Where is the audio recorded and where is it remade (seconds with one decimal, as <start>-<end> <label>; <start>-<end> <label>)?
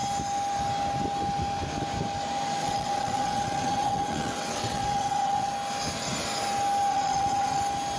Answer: 0.0-2.6 recorded; 2.6-5.5 remade; 5.5-6.9 recorded; 6.9-7.6 remade; 7.6-8.0 recorded